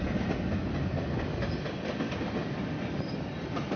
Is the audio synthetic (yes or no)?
no